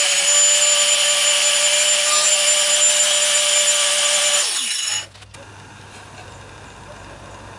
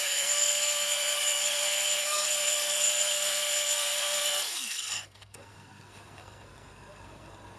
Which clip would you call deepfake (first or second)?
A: second